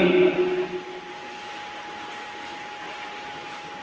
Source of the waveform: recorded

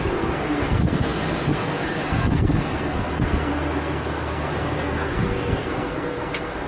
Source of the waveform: remade